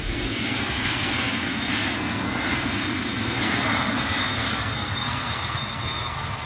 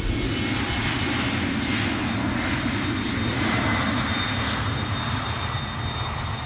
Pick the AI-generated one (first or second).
first